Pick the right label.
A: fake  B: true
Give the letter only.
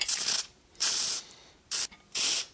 A